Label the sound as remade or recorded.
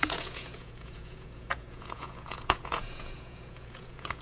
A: remade